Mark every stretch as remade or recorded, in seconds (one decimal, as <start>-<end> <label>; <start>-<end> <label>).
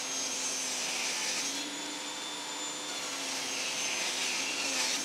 0.0-5.0 recorded